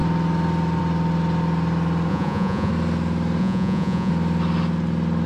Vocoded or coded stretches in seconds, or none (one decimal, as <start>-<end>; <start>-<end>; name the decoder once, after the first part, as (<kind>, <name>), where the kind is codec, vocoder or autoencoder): 2.1-2.7 (vocoder, Vocos); 3.4-4.1